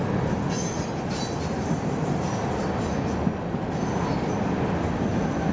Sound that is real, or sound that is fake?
real